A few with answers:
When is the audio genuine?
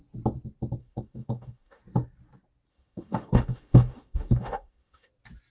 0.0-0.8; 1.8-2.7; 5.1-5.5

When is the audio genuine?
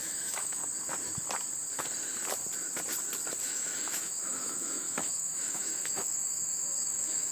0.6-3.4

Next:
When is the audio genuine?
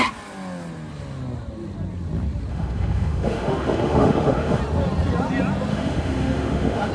0.0-2.5; 4.6-5.7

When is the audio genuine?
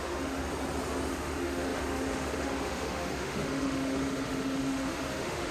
0.4-1.1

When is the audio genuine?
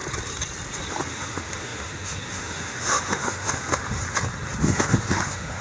0.0-1.1; 4.0-4.6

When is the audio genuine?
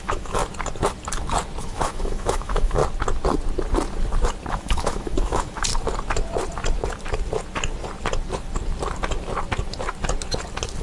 0.4-1.6; 2.8-4.5; 5.7-10.8